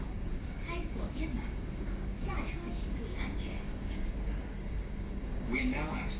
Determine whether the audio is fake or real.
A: fake